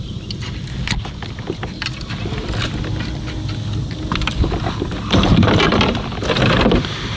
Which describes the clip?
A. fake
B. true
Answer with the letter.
B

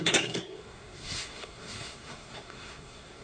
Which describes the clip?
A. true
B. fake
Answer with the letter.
B